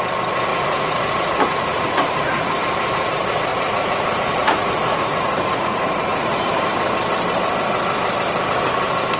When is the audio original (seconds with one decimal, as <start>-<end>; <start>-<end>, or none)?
0.0-0.5; 2.6-3.5; 6.4-9.2